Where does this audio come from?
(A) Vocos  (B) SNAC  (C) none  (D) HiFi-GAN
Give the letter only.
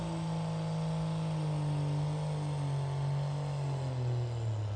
C